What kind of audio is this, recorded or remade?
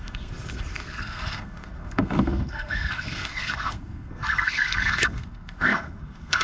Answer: remade